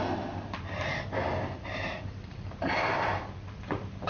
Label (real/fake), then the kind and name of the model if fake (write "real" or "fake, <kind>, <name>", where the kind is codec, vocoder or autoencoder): real